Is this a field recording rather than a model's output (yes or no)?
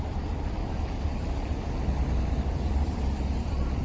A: yes